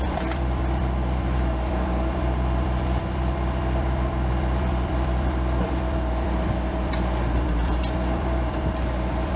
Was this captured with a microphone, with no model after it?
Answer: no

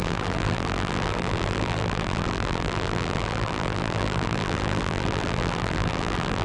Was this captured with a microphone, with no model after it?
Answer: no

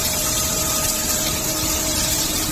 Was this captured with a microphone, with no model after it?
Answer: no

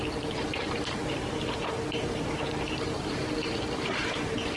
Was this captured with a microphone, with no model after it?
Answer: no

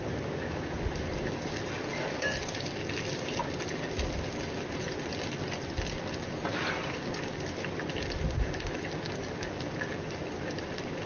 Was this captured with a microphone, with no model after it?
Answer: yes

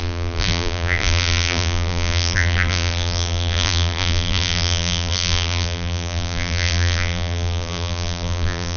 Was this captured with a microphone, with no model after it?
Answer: no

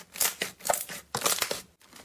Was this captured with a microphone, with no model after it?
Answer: yes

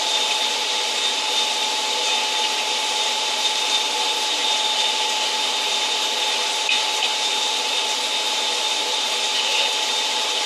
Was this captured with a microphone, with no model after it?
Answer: no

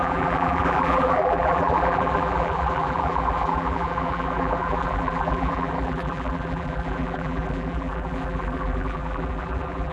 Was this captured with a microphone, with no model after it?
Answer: no